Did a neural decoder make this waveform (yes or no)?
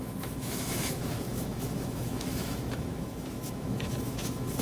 yes